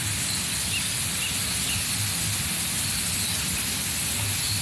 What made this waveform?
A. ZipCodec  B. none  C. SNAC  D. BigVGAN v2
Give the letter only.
B